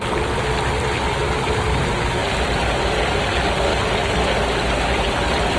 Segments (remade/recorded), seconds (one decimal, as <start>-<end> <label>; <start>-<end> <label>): 0.0-5.6 recorded